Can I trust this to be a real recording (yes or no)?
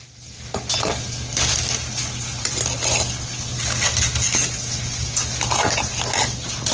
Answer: yes